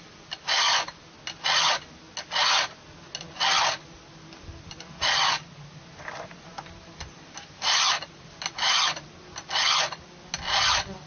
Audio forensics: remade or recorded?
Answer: recorded